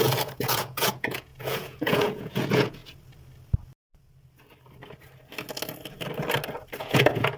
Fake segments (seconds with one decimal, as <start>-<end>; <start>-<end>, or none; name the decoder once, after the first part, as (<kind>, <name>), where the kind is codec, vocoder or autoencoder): 0.0-2.8 (vocoder, Vocos); 6.8-7.4